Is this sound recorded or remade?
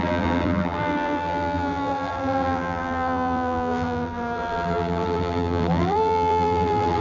remade